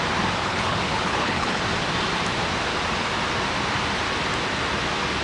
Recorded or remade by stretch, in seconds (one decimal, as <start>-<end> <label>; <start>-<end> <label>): 0.0-0.4 recorded; 0.4-1.6 remade; 1.6-5.2 recorded